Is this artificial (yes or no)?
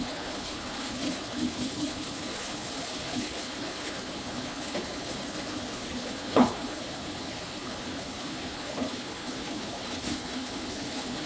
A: yes